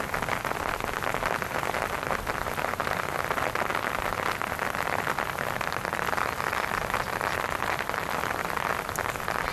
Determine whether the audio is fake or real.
real